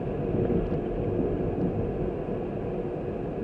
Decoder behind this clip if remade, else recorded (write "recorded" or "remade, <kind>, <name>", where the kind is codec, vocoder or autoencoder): recorded